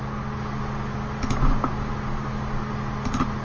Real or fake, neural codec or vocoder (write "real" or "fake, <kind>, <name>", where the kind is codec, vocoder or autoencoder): real